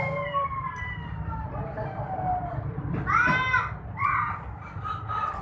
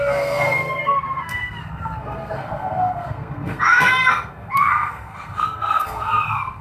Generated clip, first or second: second